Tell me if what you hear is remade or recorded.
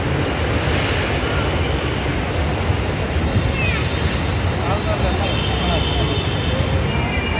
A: recorded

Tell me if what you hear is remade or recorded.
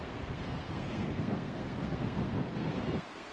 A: remade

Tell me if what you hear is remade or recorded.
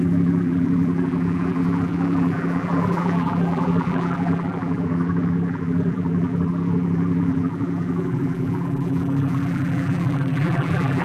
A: remade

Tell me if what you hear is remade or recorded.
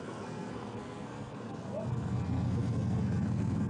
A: remade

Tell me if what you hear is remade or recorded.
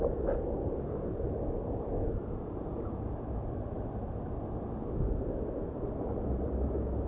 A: recorded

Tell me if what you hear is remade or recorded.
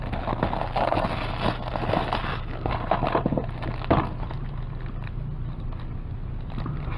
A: recorded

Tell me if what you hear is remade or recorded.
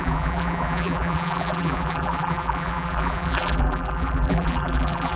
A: remade